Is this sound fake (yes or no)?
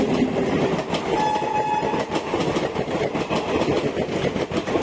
no